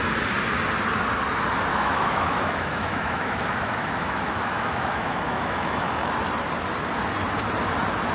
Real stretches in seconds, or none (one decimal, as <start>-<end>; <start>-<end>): 0.0-1.7; 6.1-8.1

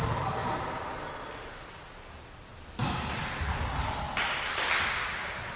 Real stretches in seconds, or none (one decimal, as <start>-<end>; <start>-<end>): 0.0-5.6

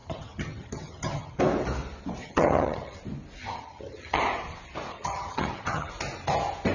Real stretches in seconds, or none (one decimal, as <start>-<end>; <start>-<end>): 1.4-2.2; 3.0-3.4; 4.2-4.9; 5.9-6.7

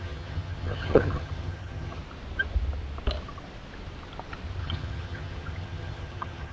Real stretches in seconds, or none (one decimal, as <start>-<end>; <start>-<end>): 2.0-4.6